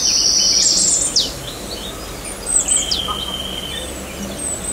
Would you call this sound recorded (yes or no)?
yes